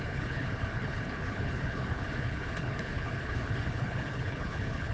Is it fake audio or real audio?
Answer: fake